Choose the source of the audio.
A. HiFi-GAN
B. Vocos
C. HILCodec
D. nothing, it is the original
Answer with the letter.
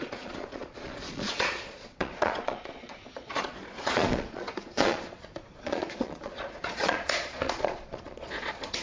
B